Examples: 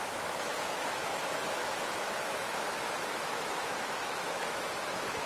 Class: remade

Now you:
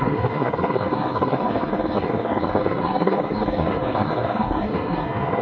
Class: remade